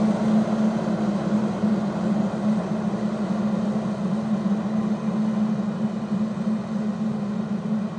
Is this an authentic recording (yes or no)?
yes